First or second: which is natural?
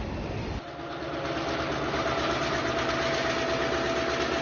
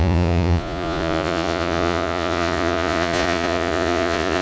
first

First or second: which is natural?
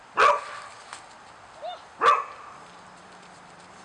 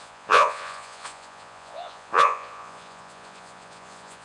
first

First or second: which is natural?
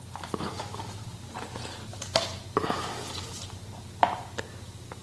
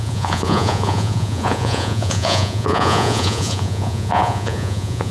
first